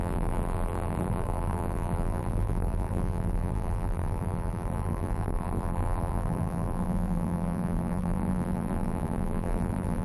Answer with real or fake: fake